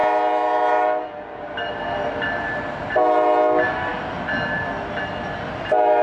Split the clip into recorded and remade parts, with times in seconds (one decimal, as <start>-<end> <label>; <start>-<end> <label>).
0.0-6.0 recorded